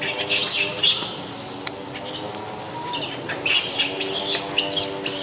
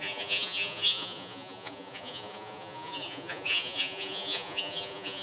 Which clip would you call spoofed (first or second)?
second